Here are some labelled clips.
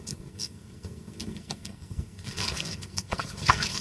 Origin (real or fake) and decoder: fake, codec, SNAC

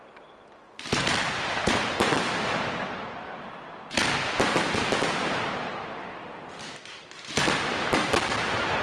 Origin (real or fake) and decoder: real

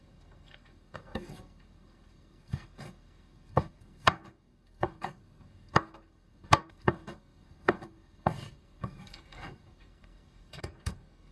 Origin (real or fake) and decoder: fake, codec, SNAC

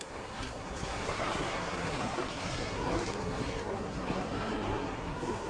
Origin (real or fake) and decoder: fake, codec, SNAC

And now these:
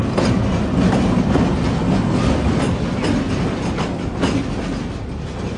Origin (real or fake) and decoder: real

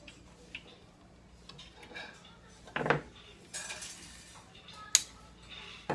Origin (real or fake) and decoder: real